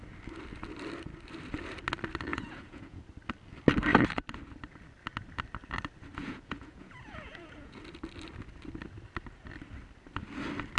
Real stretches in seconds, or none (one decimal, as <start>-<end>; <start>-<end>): 0.0-2.3; 3.0-6.2; 7.8-10.8